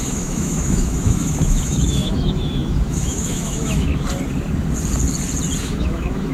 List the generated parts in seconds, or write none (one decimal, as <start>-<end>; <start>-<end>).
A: 0.0-3.9; 5.6-6.3